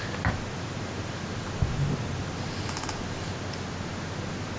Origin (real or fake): real